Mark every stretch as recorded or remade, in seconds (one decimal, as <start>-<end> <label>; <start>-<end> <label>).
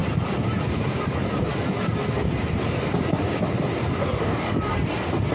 0.0-4.0 recorded; 4.0-4.5 remade; 4.5-5.3 recorded